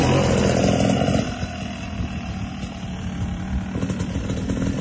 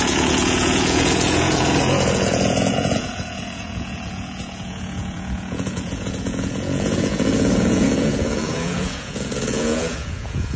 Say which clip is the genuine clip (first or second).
first